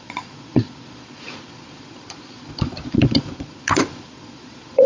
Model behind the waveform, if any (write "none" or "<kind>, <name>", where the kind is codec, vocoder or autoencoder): vocoder, Vocos